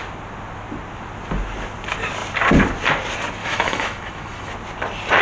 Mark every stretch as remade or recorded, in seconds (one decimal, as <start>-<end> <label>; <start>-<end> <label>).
0.0-3.4 recorded; 3.4-4.5 remade; 4.5-5.2 recorded